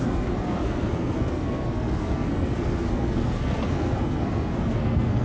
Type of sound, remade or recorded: remade